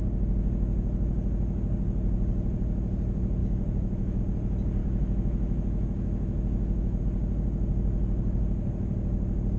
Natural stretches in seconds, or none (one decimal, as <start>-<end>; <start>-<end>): 0.0-3.4; 4.2-4.8; 7.0-9.6